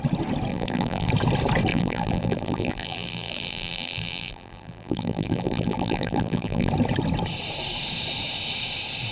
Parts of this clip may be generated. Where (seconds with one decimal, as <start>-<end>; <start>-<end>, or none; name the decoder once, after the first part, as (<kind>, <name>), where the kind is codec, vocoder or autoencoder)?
0.5-1.1 (vocoder, BigVGAN v2); 1.7-6.7